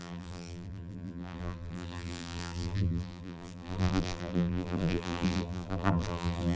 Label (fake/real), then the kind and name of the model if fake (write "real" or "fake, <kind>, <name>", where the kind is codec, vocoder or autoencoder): fake, vocoder, BigVGAN v2